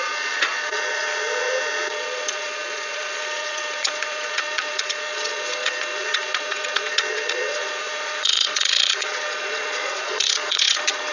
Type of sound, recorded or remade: remade